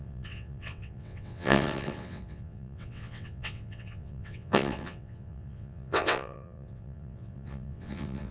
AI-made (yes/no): yes